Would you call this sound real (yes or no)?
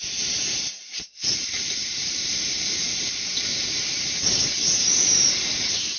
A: no